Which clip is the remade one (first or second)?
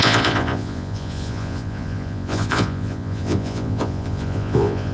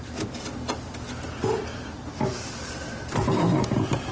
first